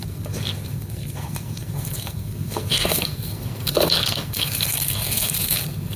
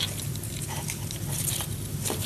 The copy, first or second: first